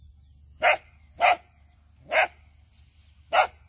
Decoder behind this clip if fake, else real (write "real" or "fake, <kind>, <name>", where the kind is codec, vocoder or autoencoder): real